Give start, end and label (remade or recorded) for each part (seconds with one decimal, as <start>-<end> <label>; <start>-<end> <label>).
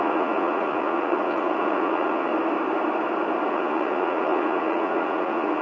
0.0-2.3 remade; 2.3-3.5 recorded; 3.5-5.6 remade